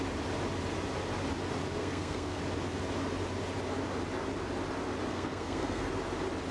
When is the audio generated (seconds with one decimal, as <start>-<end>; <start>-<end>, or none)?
1.8-2.4; 5.1-5.9

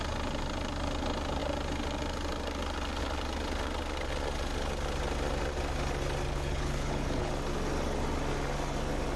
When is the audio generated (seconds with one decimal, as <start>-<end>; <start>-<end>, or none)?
6.3-7.3

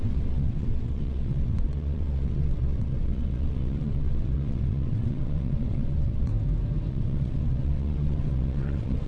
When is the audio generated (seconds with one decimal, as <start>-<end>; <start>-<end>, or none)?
0.0-6.3; 6.9-9.1

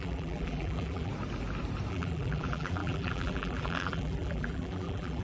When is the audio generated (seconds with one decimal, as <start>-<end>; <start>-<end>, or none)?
0.0-1.1; 1.9-5.2

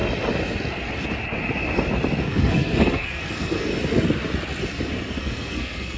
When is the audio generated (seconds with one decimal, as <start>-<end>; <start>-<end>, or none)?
2.2-3.7; 5.2-6.0

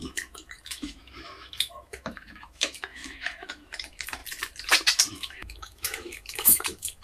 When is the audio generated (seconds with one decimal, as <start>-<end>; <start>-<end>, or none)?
0.0-4.2; 5.1-7.0

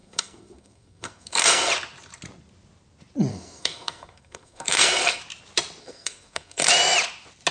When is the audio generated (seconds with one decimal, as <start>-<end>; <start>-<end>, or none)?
0.0-1.7; 3.3-5.2; 5.8-6.7

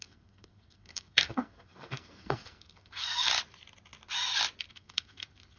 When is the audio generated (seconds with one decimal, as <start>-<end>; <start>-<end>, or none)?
0.0-3.3; 4.7-5.6